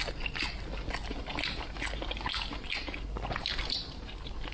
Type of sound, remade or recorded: recorded